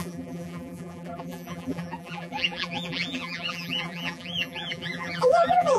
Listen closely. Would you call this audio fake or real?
fake